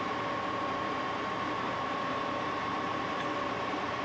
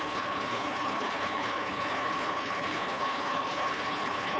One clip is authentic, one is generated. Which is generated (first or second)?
second